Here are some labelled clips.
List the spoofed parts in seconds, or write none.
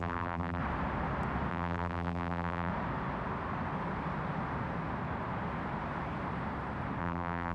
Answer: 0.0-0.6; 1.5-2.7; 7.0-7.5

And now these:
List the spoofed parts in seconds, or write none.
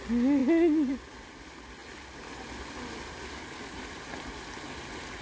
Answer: none